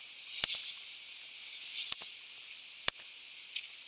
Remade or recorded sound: recorded